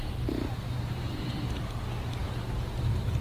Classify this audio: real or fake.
fake